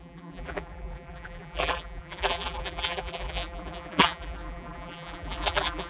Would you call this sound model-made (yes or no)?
yes